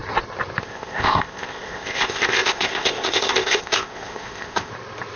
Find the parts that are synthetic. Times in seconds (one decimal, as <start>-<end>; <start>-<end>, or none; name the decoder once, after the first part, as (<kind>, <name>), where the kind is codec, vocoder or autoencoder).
0.6-4.7 (codec, ZipCodec)

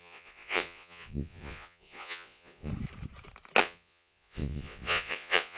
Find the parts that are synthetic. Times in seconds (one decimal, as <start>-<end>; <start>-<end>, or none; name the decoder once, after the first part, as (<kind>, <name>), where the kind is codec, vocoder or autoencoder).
0.0-2.7 (vocoder, Vocos); 3.6-5.6

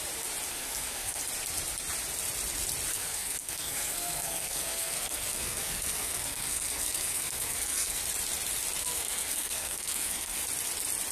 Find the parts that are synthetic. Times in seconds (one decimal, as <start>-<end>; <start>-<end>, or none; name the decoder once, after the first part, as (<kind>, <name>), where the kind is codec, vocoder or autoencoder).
0.5-1.2 (codec, SNAC); 2.9-8.0; 8.8-10.4

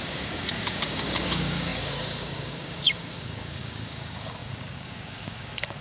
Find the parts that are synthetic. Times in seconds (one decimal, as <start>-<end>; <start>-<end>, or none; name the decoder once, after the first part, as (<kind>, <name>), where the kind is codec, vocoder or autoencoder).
0.0-5.8 (codec, DAC)

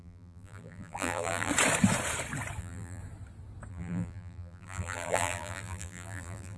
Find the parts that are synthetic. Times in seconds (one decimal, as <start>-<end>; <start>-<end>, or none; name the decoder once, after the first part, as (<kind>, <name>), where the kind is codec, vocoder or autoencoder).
0.0-1.5 (vocoder, BigVGAN v2); 2.6-3.0; 3.7-6.6

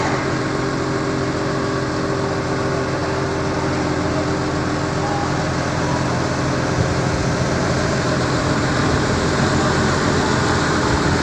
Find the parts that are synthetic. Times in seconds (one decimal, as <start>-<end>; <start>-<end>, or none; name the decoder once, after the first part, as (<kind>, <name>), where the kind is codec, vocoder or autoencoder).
none